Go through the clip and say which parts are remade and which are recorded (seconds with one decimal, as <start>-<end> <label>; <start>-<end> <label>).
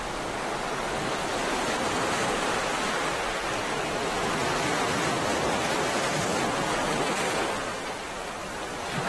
0.0-7.7 recorded; 7.7-8.5 remade; 8.5-9.1 recorded